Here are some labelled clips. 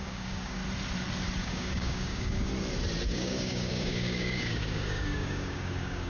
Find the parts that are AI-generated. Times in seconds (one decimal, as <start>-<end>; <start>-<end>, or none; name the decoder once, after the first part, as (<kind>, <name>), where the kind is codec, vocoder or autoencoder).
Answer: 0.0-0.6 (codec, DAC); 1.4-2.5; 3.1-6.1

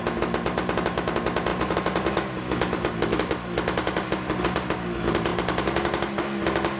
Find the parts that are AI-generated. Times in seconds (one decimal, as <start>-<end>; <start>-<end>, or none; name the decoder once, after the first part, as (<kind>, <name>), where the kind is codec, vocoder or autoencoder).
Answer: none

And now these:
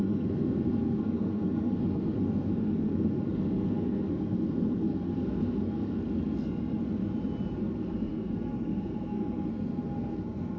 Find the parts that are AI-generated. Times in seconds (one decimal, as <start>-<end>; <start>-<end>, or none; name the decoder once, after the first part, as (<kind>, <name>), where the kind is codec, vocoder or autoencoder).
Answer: 0.0-7.0 (codec, SNAC); 7.6-10.6

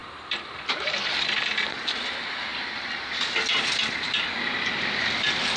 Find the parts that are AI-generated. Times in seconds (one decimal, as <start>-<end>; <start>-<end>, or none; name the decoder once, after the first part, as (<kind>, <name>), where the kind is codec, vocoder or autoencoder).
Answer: 0.0-2.5 (vocoder, BigVGAN v2); 5.0-5.6